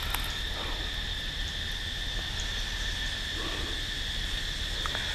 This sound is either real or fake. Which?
real